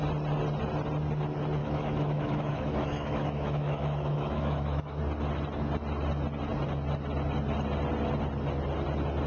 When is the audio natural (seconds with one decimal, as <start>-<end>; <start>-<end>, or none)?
0.0-1.6; 5.0-9.3